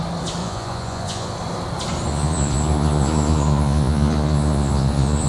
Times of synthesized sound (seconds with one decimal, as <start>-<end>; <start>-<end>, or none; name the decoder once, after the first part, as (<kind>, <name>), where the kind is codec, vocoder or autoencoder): 0.4-1.3 (vocoder, Vocos); 2.1-5.3